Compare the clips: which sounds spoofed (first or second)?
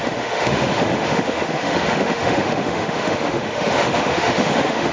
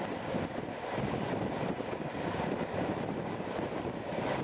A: first